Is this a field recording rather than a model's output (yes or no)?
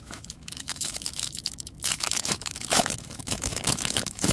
no